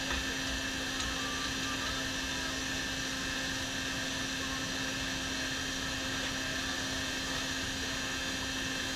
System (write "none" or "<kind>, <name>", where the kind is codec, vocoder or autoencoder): none